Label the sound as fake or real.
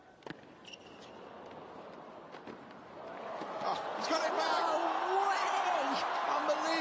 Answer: real